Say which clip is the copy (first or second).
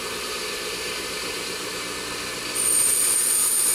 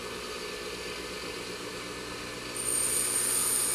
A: first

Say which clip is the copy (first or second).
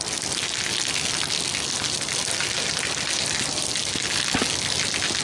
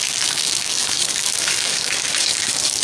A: second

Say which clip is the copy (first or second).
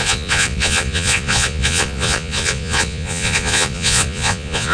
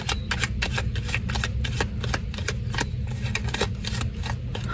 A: first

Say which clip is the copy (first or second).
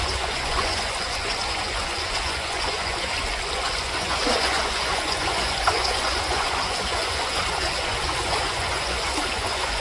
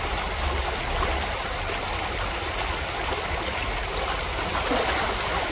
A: first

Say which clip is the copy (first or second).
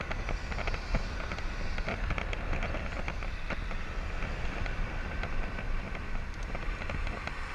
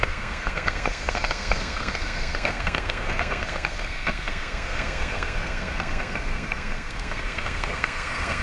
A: second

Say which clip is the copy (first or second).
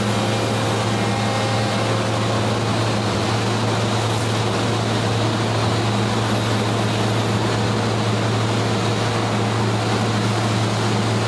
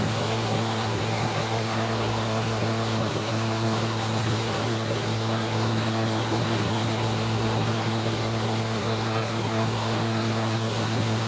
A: second